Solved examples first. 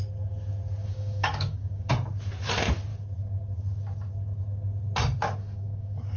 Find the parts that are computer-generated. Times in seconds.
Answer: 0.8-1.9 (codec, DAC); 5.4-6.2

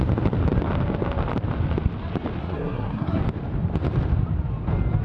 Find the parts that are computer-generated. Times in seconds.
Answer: 2.4-3.2 (codec, SNAC)

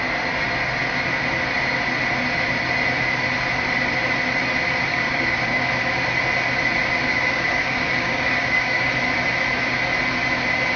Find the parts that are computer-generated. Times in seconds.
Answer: 4.9-5.7 (codec, DAC); 7.1-8.9

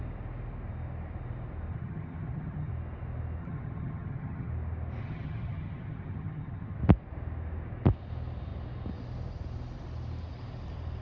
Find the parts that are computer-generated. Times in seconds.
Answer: 1.7-2.7 (vocoder, HiFi-GAN); 3.4-4.5; 5.0-6.8

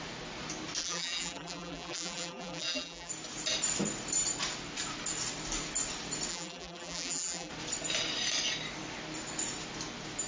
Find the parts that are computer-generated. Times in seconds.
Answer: 0.8-3.1 (vocoder, BigVGAN v2); 6.3-7.5

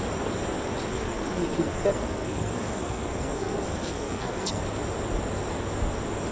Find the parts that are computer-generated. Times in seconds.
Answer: 0.9-4.6 (codec, SNAC)

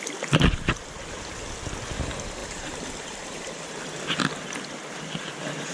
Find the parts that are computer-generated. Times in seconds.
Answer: 2.4-3.6 (vocoder, BigVGAN v2)